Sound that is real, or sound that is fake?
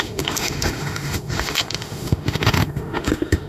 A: fake